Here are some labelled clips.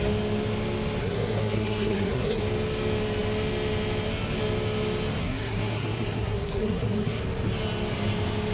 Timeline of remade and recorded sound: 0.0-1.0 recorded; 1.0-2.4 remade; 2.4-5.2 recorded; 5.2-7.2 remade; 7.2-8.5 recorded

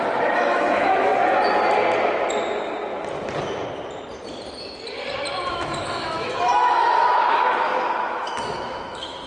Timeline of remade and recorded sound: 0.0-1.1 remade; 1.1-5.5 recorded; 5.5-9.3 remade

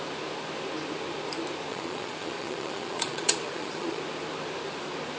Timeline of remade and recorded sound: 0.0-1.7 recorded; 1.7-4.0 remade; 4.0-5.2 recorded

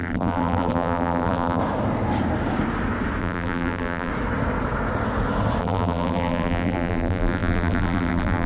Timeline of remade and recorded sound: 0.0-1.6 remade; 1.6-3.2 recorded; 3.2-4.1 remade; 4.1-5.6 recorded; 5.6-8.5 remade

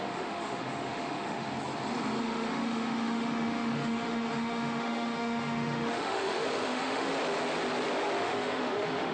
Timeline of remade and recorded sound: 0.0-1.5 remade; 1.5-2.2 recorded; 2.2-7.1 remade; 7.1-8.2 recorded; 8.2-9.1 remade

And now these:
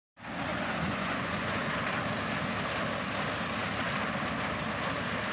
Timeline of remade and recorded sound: 0.0-0.5 recorded; 0.5-1.6 remade; 1.6-5.3 recorded

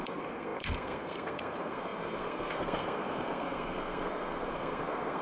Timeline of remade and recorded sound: 0.0-5.2 remade